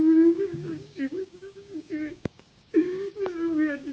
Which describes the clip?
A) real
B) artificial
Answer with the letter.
B